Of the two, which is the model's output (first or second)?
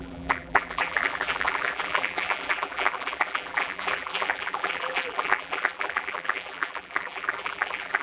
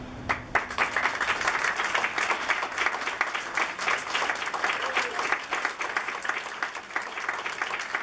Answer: first